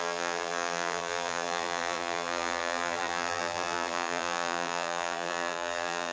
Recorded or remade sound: remade